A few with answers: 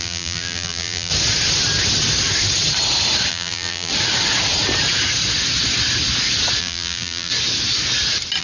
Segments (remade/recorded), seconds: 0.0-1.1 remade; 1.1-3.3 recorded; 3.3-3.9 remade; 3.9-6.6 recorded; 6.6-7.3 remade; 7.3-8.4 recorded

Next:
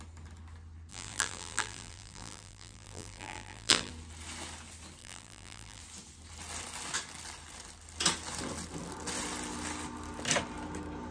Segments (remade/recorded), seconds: 0.0-0.9 recorded; 0.9-3.9 remade; 3.9-5.0 recorded; 5.0-5.8 remade; 5.8-11.1 recorded